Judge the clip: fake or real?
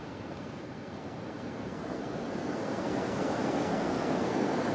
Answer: fake